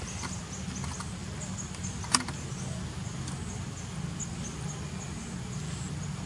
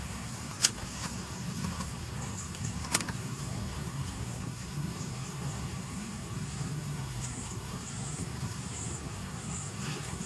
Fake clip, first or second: second